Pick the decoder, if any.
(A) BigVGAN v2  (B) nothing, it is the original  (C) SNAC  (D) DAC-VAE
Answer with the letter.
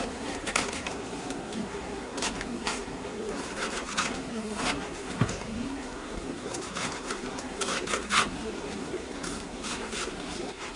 C